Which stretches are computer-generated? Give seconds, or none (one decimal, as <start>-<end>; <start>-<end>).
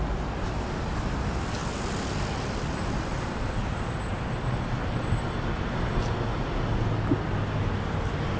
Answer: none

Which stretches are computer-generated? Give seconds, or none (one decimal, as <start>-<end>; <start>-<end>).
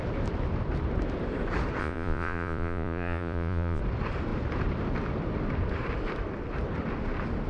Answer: 1.8-3.8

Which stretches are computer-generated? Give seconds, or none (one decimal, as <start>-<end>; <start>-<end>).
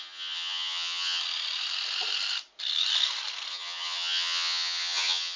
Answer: 0.0-1.2; 3.5-5.4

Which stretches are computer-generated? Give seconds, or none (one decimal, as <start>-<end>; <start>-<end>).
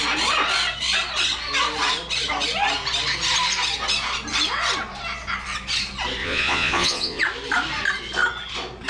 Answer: 6.2-7.2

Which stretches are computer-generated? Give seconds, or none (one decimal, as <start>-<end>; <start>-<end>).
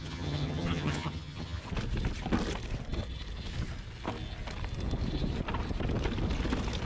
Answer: 0.0-1.6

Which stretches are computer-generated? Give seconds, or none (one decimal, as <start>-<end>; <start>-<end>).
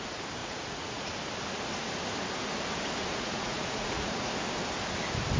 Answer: 0.4-1.1; 3.1-4.3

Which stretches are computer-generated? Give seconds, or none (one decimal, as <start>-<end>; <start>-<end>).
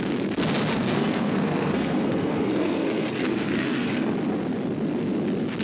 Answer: 0.7-4.1